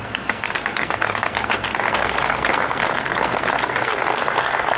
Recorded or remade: remade